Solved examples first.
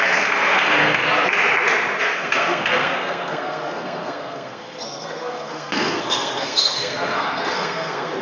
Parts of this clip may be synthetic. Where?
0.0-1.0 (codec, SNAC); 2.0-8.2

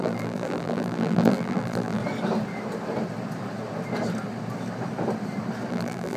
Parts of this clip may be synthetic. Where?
0.0-2.0 (vocoder, BigVGAN v2); 5.7-6.2

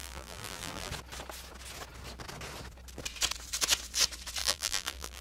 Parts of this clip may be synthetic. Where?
0.0-0.9 (vocoder, BigVGAN v2); 4.4-5.2

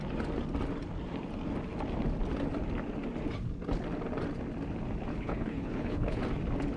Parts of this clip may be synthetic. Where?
5.1-6.2 (codec, HILCodec)

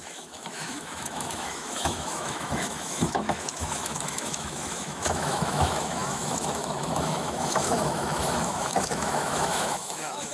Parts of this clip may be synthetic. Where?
0.0-10.3 (autoencoder, DAC-VAE)